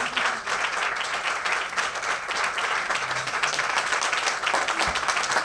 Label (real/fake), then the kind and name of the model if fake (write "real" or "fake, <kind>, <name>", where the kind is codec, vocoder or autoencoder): real